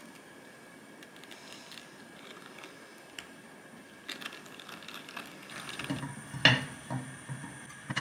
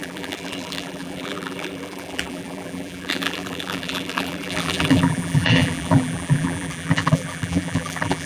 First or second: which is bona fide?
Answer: first